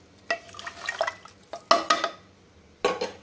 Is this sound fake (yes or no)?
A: no